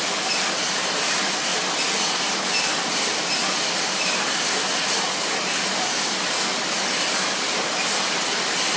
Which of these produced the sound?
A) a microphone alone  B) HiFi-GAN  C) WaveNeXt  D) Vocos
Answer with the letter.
A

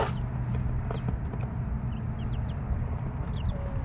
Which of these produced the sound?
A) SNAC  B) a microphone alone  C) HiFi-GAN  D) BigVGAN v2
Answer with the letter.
B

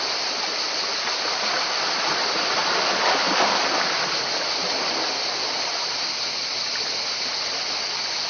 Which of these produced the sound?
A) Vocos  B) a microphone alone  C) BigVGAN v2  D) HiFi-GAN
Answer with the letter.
B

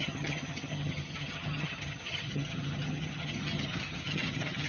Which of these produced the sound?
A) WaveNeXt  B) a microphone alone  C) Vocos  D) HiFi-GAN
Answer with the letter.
D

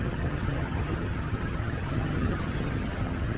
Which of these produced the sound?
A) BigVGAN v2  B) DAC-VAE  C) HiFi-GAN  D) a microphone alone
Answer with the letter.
C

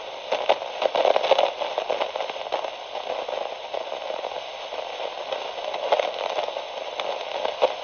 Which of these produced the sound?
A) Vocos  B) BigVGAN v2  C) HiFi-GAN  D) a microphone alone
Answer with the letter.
D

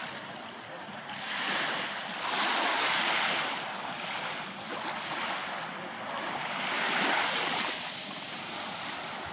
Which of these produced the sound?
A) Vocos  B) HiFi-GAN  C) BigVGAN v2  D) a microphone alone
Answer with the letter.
D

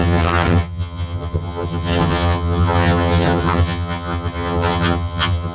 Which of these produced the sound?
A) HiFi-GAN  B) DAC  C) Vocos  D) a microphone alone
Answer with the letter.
A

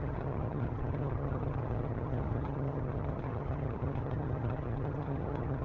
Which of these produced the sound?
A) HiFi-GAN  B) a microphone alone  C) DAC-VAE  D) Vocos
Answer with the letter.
A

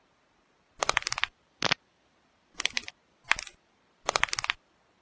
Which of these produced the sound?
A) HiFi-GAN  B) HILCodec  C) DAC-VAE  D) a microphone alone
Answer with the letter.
D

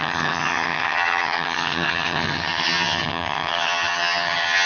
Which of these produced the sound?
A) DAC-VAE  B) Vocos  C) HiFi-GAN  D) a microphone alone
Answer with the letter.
C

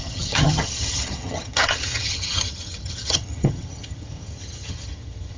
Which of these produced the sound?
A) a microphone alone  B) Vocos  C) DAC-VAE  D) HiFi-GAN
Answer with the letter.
D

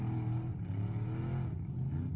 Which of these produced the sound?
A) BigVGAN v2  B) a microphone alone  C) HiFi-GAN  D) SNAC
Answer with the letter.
B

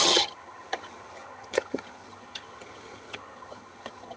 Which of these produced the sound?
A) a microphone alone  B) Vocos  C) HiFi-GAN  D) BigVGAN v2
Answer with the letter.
C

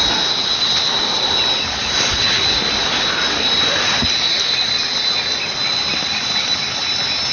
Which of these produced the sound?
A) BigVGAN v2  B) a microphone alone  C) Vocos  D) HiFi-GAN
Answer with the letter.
B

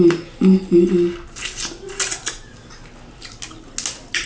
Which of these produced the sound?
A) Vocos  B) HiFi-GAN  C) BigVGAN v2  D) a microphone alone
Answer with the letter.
D